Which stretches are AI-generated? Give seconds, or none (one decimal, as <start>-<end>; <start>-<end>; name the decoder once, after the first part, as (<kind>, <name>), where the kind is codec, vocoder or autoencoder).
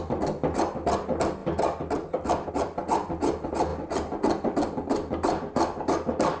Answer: none